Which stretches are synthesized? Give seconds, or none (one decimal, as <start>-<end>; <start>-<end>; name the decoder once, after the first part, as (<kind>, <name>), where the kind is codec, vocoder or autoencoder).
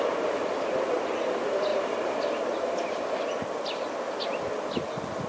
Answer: none